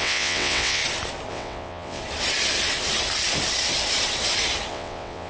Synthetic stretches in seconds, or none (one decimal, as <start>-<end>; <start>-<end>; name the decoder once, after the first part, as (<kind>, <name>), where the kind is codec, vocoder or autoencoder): 0.0-0.8 (vocoder, WaveNeXt); 1.3-2.0; 4.7-5.3